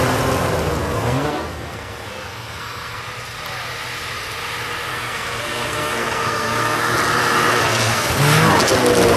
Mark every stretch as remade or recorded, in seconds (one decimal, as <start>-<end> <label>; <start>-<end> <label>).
0.0-0.8 recorded; 0.8-3.0 remade; 3.0-4.9 recorded; 4.9-6.8 remade; 6.8-7.5 recorded; 7.5-8.1 remade; 8.1-9.2 recorded

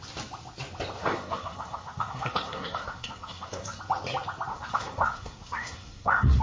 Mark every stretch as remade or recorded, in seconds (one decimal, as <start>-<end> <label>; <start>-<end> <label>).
0.0-1.0 recorded; 1.0-3.8 remade; 3.8-4.5 recorded; 4.5-6.4 remade

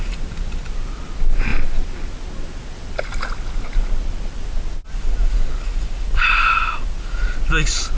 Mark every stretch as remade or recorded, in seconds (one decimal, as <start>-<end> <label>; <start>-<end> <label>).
0.0-8.0 recorded